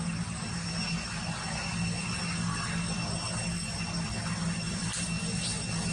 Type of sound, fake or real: real